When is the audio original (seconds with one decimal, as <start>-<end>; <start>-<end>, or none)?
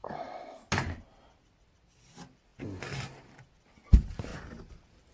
0.6-5.1